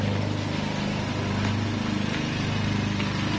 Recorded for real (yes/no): yes